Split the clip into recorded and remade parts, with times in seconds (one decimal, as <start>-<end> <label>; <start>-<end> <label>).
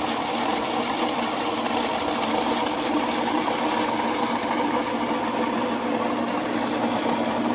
0.0-0.5 recorded; 0.5-3.6 remade; 3.6-7.5 recorded